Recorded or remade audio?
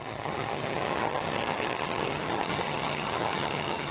remade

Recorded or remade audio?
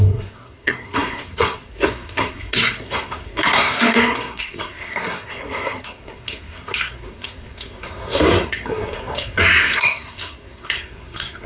remade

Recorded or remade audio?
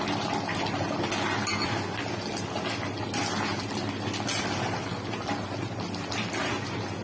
recorded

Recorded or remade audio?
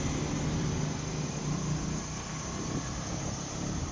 recorded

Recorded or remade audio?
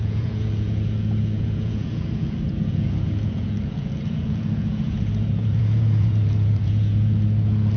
remade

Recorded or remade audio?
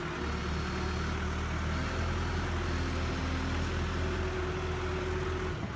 recorded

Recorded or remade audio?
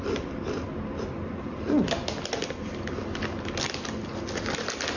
recorded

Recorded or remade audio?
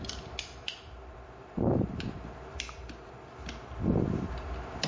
remade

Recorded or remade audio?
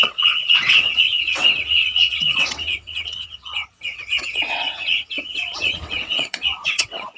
remade